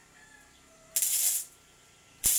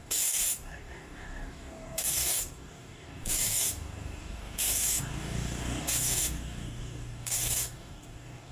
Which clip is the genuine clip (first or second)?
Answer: first